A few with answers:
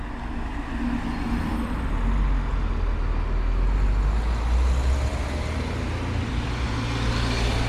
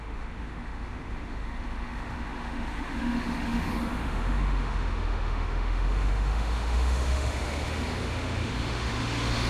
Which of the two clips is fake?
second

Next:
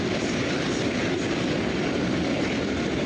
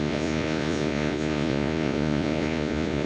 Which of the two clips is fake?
second